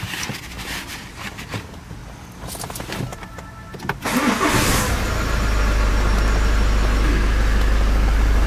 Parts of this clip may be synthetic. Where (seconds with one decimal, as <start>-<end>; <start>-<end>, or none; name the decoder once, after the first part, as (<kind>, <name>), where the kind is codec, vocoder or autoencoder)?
none